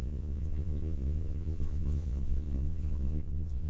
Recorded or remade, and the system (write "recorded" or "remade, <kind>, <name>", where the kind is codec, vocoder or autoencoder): remade, vocoder, Vocos